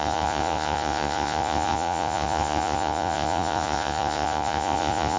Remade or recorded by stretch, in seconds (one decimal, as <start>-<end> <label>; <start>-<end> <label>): 0.0-5.2 remade